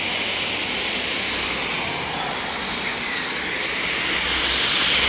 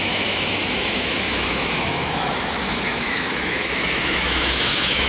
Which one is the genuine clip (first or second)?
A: first